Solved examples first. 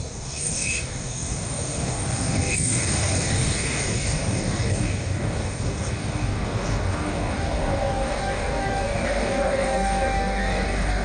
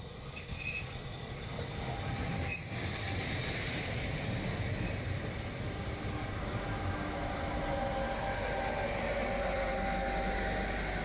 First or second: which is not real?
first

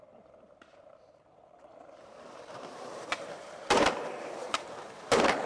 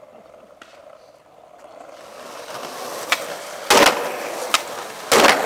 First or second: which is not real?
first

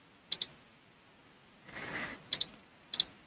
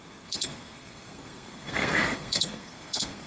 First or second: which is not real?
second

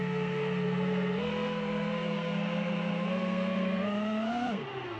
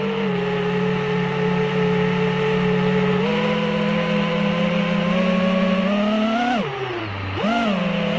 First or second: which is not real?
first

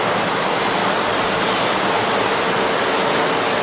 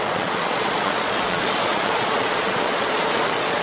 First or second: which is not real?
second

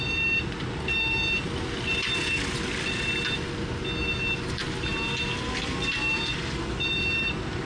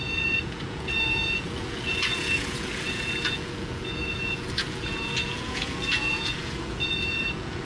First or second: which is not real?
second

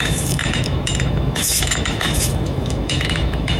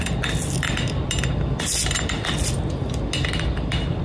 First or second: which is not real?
first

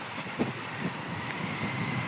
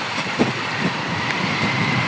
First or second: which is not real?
second